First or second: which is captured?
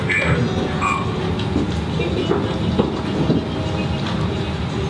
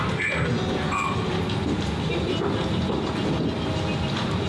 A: first